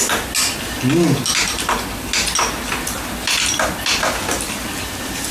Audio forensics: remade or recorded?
recorded